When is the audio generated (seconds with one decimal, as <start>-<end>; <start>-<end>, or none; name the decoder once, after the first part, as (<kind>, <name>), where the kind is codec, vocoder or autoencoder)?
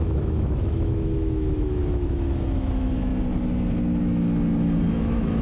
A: 0.0-3.1 (autoencoder, DAC-VAE); 4.9-5.4